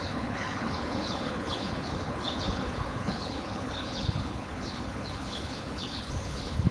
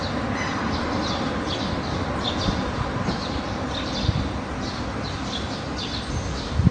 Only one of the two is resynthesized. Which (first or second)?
first